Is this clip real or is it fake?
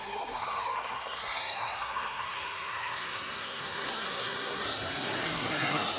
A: fake